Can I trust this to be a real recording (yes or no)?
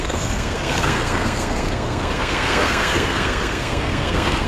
no